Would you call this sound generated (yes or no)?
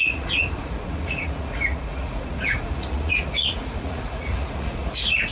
yes